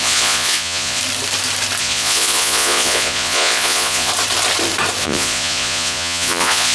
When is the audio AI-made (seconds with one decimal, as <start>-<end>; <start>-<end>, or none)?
0.0-1.0; 1.8-4.1; 5.0-6.7